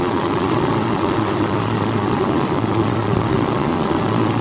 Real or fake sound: fake